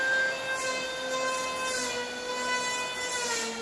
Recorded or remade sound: recorded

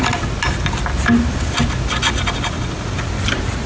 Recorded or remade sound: recorded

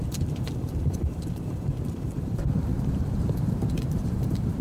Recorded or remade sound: remade